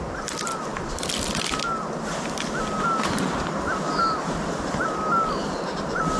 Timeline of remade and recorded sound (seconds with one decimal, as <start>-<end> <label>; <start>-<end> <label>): 0.0-6.2 recorded